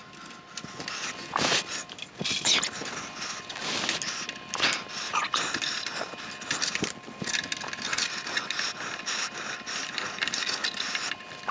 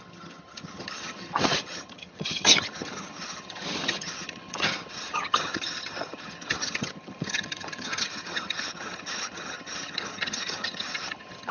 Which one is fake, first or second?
second